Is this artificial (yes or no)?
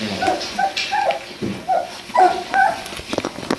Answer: yes